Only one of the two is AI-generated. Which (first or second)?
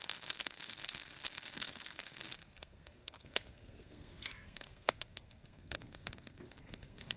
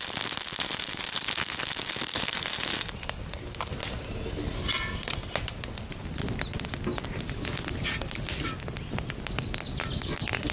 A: first